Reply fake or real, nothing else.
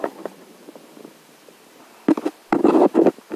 fake